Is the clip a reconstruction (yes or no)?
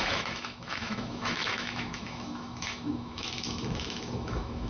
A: yes